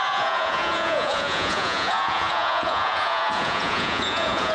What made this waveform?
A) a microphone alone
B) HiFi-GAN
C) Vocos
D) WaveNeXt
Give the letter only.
C